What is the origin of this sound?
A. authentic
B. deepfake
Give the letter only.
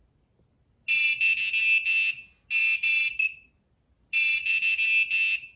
A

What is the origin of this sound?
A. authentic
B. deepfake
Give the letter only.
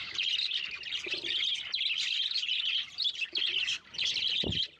A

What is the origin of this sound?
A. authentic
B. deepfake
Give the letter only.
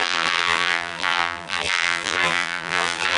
B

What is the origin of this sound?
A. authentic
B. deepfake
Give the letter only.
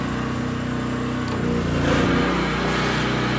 A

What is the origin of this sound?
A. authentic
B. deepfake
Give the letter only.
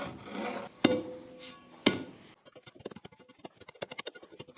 A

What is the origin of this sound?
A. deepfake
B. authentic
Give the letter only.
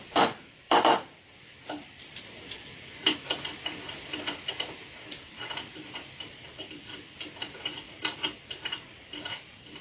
A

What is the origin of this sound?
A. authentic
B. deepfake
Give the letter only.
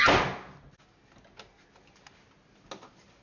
A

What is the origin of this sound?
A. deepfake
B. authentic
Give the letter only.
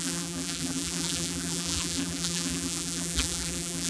A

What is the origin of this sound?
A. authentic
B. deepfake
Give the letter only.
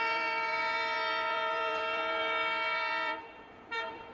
B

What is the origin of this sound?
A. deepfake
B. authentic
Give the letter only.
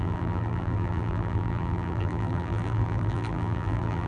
A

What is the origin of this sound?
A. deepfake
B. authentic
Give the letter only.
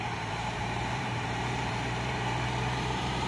A